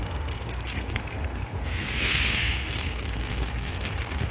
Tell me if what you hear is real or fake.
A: fake